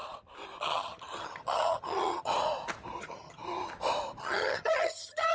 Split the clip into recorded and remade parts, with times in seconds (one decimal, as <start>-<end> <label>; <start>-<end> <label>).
0.0-0.6 recorded; 0.6-2.3 remade; 2.3-3.0 recorded; 3.0-3.4 remade; 3.4-4.2 recorded; 4.2-5.3 remade